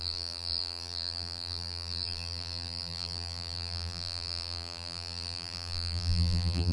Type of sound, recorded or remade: remade